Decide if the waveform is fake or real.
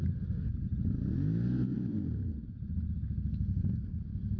real